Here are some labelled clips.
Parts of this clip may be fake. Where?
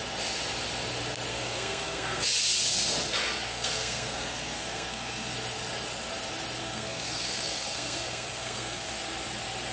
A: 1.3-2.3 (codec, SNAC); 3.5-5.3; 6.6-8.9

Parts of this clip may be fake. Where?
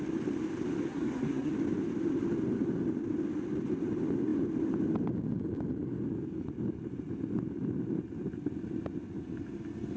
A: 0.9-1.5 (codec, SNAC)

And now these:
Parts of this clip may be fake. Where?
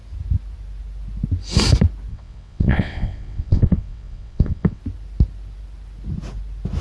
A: 2.1-4.8 (vocoder, WaveNeXt)